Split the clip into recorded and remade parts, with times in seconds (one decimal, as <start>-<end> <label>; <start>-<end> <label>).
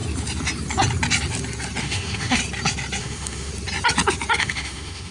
0.0-1.8 recorded; 1.8-2.4 remade; 2.4-3.0 recorded; 3.0-3.5 remade; 3.5-4.4 recorded; 4.4-5.1 remade